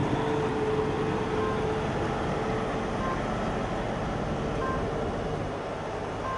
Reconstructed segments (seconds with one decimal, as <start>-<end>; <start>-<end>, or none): none